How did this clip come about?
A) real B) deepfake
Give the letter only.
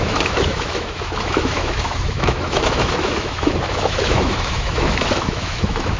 B